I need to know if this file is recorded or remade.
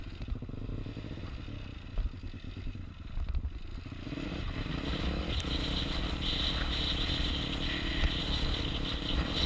recorded